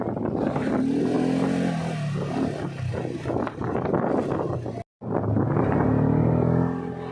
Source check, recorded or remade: recorded